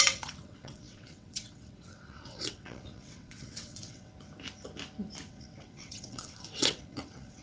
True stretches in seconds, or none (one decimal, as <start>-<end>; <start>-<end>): 4.1-5.3